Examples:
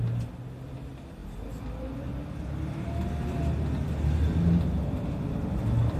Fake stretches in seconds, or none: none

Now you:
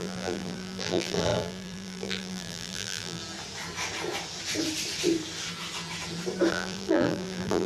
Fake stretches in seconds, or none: 0.0-3.2; 6.5-7.7

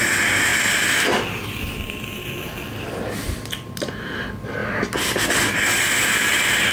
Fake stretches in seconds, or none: none

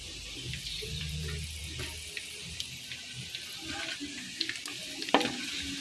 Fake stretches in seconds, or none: 0.0-5.8